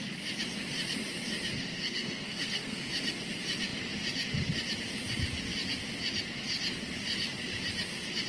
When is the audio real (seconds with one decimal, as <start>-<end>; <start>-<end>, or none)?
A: 0.0-1.7; 2.9-8.3